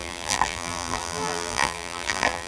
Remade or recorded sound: remade